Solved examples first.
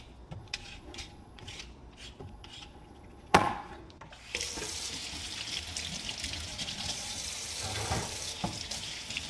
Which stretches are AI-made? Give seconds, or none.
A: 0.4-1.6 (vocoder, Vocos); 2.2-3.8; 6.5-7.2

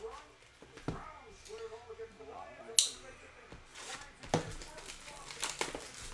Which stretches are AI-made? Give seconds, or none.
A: none

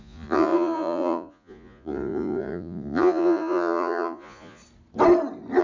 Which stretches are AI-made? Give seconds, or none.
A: 0.0-4.6 (vocoder, Vocos)